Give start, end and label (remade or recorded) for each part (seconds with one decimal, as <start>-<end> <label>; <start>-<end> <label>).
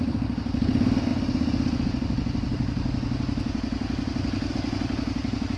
0.0-5.6 recorded